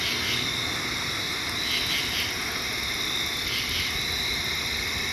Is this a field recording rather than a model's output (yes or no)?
yes